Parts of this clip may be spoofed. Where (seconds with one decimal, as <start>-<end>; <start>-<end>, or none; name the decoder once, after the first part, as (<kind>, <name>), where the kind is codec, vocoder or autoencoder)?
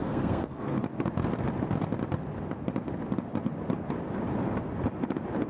0.0-0.8 (codec, SNAC)